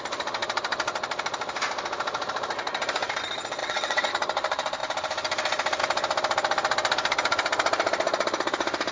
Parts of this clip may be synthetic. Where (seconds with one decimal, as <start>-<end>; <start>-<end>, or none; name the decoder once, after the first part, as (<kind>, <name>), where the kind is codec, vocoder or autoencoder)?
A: 3.6-4.1 (vocoder, WaveNeXt)